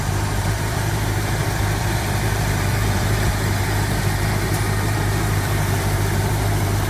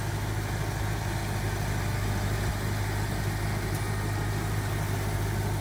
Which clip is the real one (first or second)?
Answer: second